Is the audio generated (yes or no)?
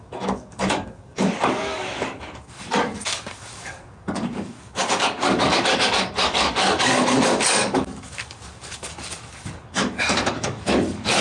yes